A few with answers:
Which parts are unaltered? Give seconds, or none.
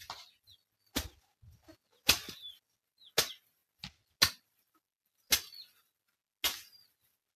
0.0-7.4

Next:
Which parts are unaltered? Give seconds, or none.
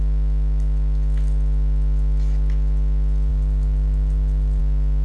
0.0-3.3; 4.6-5.0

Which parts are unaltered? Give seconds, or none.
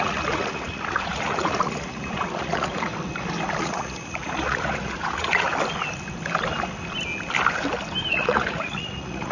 2.9-3.6; 5.5-8.1